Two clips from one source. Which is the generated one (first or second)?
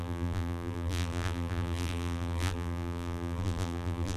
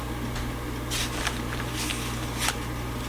first